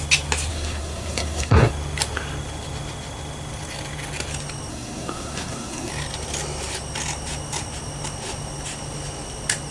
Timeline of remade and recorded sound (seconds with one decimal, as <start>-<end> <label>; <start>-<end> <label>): 0.0-0.5 recorded; 0.5-1.7 remade; 1.7-4.7 recorded; 4.7-5.9 remade; 5.9-9.7 recorded